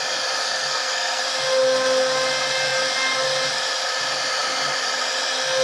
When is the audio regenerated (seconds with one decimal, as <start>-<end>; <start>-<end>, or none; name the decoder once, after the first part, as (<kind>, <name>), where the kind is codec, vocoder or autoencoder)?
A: 0.4-1.2 (codec, SNAC)